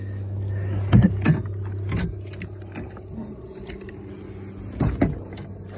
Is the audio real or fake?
real